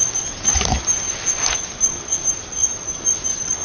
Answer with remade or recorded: recorded